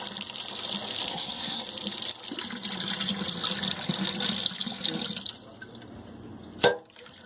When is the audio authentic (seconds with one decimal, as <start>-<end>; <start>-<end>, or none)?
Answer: 0.0-1.1; 1.6-7.3